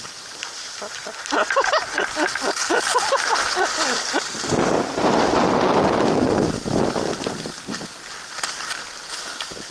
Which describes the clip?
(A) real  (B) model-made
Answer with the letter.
A